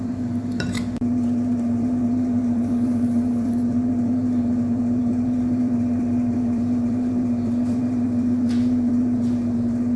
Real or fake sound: fake